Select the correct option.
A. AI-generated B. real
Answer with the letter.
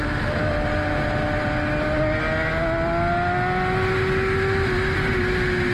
B